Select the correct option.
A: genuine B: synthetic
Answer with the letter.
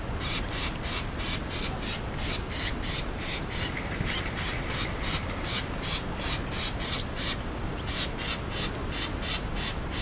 A